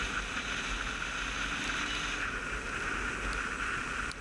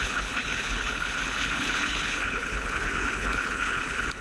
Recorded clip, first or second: first